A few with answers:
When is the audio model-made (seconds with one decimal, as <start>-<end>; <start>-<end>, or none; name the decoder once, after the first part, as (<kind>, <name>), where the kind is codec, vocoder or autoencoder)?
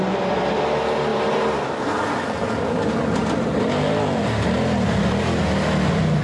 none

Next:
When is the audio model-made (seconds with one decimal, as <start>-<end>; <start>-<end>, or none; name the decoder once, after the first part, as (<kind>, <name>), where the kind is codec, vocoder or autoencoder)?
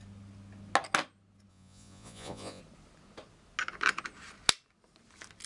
1.5-2.6 (vocoder, Vocos)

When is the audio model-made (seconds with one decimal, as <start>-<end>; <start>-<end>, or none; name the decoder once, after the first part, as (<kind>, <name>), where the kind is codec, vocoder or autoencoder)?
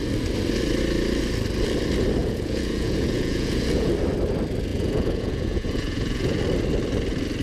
2.2-3.9 (vocoder, Vocos); 4.7-6.4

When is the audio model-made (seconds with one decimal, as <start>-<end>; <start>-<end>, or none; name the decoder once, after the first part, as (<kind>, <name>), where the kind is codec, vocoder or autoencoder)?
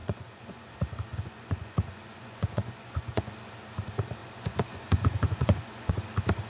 0.0-0.7 (vocoder, Vocos); 1.1-3.3; 4.2-5.9